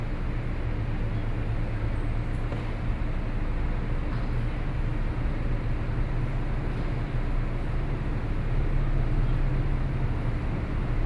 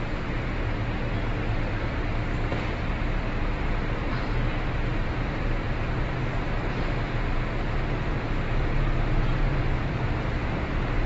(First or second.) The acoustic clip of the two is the first